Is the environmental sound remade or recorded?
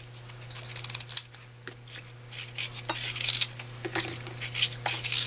recorded